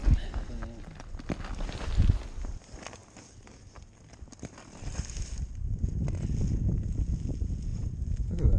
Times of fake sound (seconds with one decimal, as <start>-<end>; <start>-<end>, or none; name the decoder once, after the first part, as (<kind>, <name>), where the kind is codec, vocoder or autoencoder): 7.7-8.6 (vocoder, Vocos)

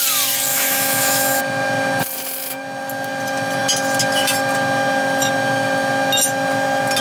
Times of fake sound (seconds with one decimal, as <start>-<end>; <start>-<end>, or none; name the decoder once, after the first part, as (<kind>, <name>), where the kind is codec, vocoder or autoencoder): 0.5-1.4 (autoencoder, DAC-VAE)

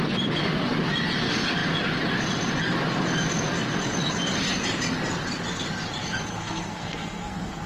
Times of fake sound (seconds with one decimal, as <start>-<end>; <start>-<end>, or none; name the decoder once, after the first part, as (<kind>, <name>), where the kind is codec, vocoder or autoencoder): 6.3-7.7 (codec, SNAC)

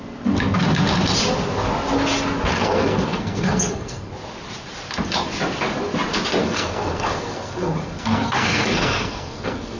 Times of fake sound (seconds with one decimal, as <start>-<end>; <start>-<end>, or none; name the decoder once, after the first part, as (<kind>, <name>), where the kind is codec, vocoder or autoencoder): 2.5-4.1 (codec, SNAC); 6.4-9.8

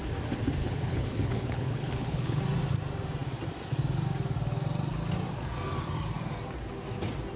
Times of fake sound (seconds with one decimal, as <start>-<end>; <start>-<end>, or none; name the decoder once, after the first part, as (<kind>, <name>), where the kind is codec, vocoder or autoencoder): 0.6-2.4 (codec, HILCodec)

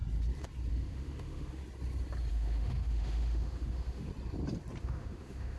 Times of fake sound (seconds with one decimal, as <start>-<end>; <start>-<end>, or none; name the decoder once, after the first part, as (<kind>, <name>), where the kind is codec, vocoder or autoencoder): 0.7-1.6 (autoencoder, DAC-VAE); 2.3-4.1; 4.8-5.6